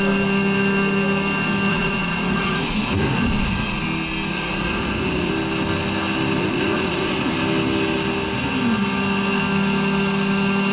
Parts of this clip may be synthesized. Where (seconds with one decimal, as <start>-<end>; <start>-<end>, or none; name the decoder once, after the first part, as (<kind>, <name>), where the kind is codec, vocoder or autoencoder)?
1.7-3.8 (vocoder, Vocos); 4.3-5.3; 6.4-7.3

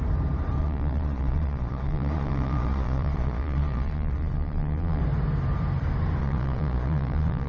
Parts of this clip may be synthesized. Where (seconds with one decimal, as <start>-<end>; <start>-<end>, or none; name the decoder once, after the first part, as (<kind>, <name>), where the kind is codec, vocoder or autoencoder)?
0.6-5.0 (vocoder, Vocos); 6.2-7.5